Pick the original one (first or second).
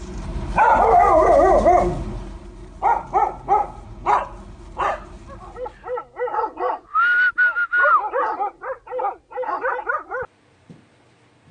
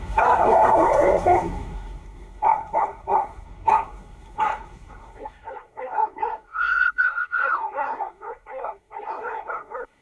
first